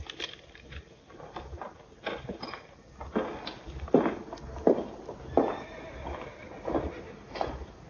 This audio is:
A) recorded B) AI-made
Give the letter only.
A